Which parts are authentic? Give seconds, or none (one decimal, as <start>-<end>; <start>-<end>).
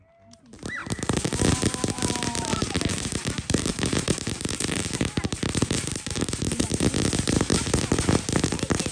0.0-0.8; 1.4-2.5; 6.8-8.9